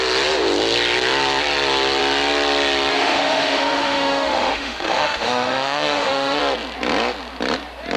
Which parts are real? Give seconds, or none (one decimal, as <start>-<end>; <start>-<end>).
0.0-2.9; 6.4-8.0

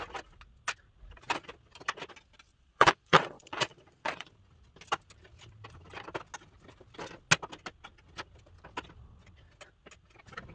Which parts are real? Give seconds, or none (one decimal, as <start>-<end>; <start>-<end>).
0.0-2.5; 4.3-10.5

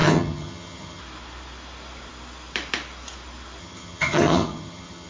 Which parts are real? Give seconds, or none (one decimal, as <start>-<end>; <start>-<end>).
1.0-3.6

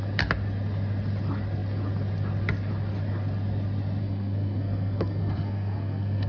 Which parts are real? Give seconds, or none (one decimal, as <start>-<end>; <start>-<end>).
0.0-4.0

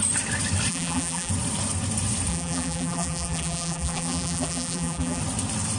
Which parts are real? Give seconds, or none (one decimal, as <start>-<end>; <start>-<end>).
0.0-0.7; 1.3-2.3; 5.2-5.8

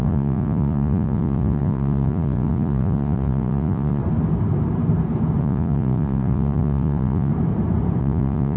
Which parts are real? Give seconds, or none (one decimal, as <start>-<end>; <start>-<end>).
4.0-5.4; 7.3-8.0

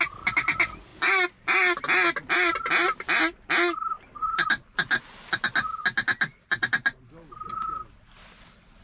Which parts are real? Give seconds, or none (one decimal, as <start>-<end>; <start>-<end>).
0.0-8.8